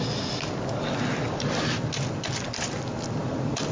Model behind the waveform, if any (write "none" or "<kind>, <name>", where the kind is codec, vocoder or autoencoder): none